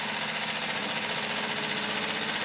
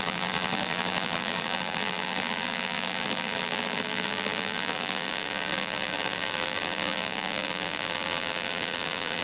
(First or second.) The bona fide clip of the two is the first